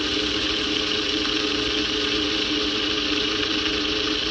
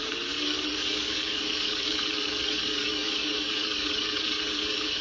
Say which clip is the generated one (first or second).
second